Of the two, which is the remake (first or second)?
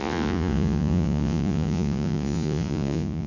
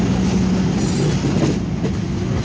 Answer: first